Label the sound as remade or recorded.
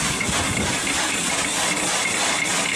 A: recorded